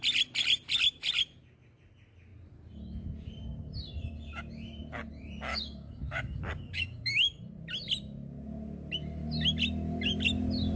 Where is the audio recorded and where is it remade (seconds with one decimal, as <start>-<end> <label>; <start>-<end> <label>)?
0.0-5.5 recorded; 5.5-7.4 remade; 7.4-10.8 recorded